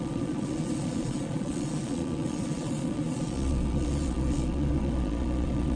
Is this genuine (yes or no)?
no